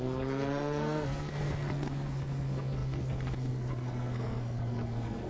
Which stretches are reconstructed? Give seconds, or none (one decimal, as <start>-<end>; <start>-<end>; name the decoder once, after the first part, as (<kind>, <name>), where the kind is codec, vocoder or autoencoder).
0.0-5.3 (codec, SNAC)